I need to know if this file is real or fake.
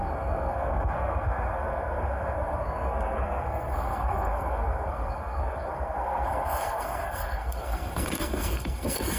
fake